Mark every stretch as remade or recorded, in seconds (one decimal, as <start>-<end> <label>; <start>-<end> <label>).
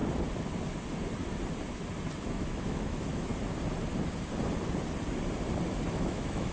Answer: 0.0-2.3 recorded; 2.3-3.3 remade; 3.3-5.9 recorded; 5.9-6.5 remade